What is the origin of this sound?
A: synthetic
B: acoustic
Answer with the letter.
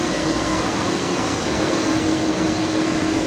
A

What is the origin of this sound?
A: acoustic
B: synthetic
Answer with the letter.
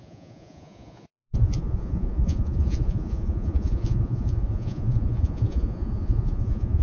B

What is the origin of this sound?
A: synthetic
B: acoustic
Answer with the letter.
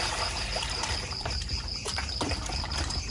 A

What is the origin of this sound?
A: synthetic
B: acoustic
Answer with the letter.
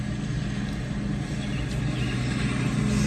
B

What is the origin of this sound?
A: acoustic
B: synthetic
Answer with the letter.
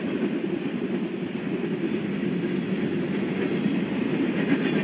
A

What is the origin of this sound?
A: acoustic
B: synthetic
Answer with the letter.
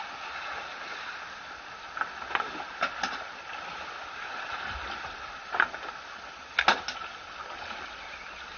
A